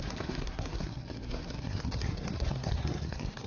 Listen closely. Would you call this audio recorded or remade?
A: remade